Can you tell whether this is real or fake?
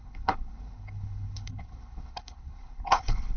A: fake